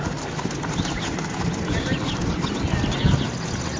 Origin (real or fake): real